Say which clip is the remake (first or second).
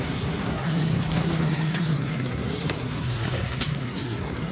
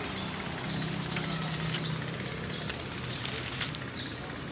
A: first